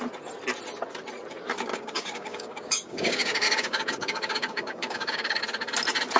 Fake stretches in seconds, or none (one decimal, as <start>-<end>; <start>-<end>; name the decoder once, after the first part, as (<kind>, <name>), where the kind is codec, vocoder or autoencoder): 1.7-5.4 (codec, DAC)